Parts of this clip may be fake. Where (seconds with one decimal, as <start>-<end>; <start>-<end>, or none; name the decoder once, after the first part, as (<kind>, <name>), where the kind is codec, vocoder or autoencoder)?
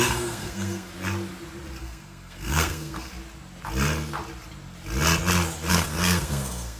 0.0-0.9 (codec, SNAC); 1.8-3.1; 5.7-6.8